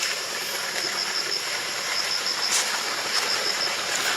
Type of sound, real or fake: real